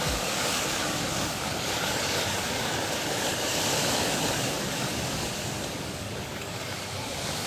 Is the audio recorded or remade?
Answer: remade